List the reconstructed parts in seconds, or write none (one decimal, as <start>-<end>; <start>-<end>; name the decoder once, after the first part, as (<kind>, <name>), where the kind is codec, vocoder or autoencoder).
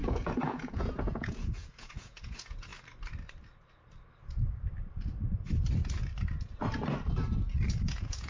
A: 0.0-2.7 (vocoder, Vocos); 7.7-8.3